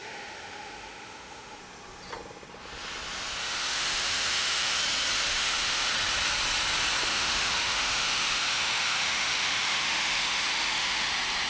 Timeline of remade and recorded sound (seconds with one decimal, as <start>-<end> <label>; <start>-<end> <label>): 0.0-1.6 remade; 1.6-3.4 recorded; 3.4-4.8 remade; 4.8-5.3 recorded; 5.3-5.9 remade; 5.9-7.1 recorded; 7.1-11.1 remade; 11.1-11.5 recorded